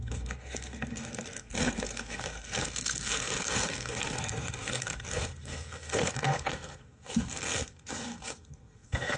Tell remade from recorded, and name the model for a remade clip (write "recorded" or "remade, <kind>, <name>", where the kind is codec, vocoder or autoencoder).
remade, codec, SNAC